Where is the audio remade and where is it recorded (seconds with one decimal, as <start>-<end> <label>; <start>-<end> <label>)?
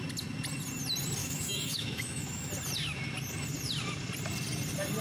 0.0-1.2 recorded; 1.2-2.5 remade; 2.5-5.0 recorded